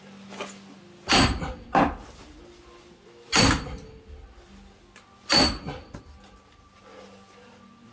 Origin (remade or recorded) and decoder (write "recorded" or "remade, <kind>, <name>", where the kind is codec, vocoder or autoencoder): recorded